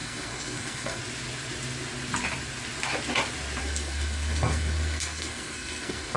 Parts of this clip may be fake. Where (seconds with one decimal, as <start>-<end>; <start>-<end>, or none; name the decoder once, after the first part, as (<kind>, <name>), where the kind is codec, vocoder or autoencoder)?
0.0-1.0 (codec, SNAC); 3.6-6.2